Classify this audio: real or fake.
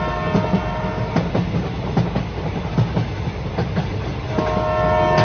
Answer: real